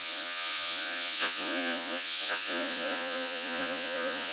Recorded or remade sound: remade